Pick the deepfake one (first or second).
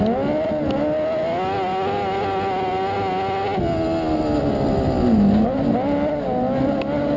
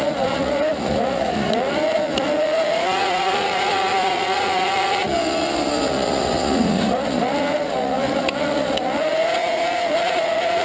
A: second